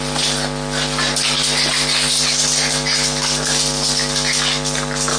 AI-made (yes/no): no